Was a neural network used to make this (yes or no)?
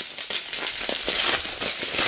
yes